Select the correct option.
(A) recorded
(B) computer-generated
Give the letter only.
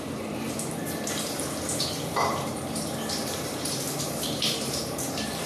B